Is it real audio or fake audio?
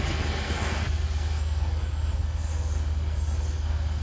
fake